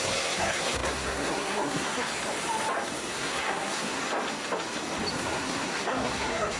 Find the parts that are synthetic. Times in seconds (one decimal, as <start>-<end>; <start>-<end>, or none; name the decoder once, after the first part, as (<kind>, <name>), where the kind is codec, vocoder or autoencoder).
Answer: 0.0-2.1 (codec, SNAC); 3.1-4.0; 5.1-6.6

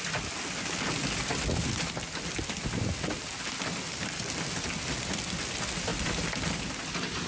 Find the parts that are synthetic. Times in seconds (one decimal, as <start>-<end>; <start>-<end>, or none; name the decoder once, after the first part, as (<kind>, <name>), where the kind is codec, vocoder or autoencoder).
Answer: 5.9-6.6 (vocoder, BigVGAN v2)

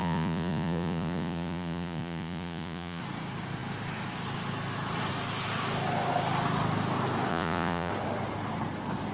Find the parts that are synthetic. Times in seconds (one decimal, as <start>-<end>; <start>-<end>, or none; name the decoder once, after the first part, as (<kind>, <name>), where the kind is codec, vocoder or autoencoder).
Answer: 0.0-3.0 (vocoder, Vocos); 7.3-7.9

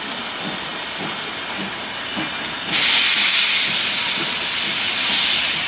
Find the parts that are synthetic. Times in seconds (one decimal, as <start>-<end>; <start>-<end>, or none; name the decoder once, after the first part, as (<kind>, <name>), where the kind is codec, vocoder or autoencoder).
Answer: none

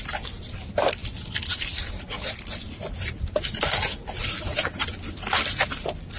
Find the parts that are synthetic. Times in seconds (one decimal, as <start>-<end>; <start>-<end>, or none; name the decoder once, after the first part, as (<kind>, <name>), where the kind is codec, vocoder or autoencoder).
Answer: none